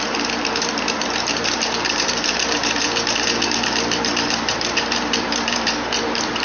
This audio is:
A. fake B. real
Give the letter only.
A